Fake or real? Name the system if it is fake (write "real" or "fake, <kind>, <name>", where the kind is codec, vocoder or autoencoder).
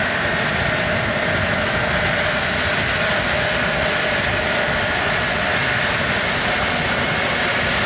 real